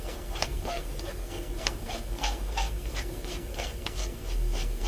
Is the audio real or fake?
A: fake